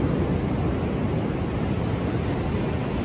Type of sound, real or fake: real